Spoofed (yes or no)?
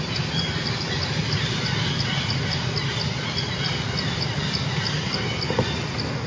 no